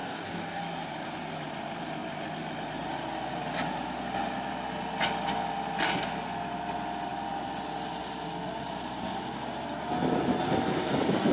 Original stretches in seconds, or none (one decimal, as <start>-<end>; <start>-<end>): 0.6-11.3